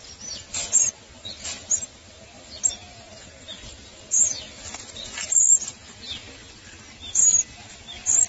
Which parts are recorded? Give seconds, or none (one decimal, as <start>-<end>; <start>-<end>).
0.0-8.3

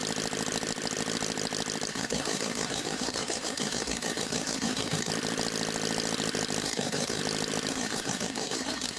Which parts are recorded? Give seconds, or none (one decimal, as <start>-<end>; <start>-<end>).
0.0-1.9; 5.1-6.6; 7.2-7.7

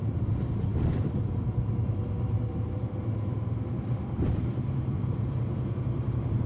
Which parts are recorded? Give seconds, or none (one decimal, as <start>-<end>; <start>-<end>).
0.7-1.3

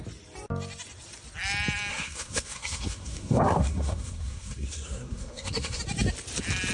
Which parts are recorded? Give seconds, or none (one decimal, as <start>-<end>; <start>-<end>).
0.0-1.9; 5.8-6.7